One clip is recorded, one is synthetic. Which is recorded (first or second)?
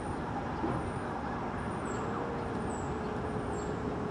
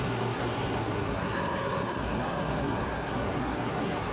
first